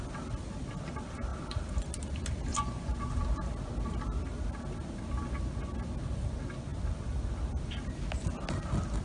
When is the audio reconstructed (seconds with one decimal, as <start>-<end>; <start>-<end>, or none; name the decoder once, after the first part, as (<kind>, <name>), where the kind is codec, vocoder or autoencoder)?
2.5-3.1 (vocoder, Vocos)